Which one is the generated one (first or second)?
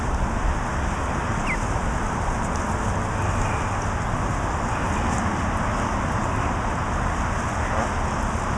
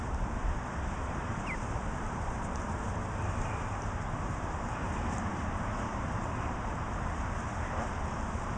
second